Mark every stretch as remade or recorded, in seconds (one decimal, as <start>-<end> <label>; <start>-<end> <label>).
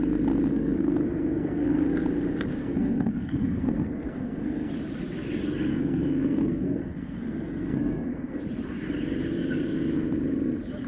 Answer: 0.0-0.5 recorded; 0.5-1.9 remade; 1.9-2.6 recorded; 2.6-4.7 remade; 4.7-5.7 recorded; 5.7-8.4 remade; 8.4-10.9 recorded